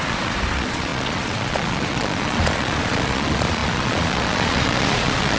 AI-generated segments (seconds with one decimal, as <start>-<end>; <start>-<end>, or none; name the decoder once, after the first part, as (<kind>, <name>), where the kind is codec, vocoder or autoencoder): 0.0-5.4 (vocoder, Vocos)